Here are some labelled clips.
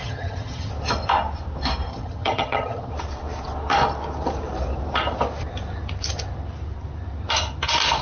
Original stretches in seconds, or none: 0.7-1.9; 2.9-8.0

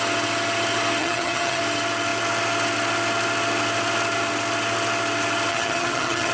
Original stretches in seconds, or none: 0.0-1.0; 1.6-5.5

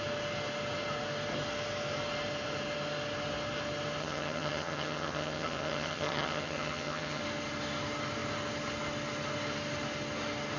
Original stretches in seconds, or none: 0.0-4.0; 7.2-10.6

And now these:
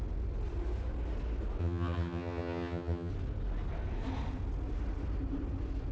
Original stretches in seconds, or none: 0.0-1.6; 3.1-5.9

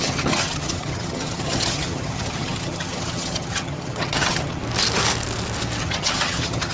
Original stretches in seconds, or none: 4.6-5.8

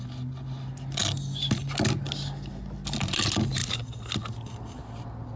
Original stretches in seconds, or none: 0.0-5.4